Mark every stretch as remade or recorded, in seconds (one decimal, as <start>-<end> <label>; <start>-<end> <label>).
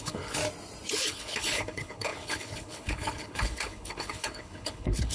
0.0-0.4 remade; 0.4-0.9 recorded; 0.9-5.1 remade